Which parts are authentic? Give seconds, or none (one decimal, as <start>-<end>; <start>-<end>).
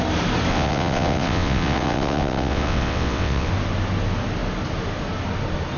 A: 0.0-0.5; 3.5-5.8